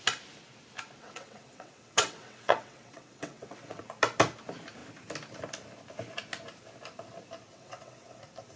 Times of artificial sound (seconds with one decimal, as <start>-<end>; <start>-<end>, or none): 1.0-3.8; 7.5-8.2